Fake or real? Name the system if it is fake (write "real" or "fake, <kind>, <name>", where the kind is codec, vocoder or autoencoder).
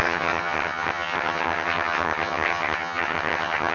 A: fake, vocoder, HiFi-GAN